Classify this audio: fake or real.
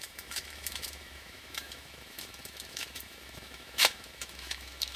fake